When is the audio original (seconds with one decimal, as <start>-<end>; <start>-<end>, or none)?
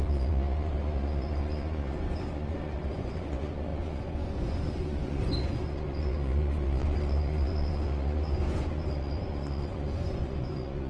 none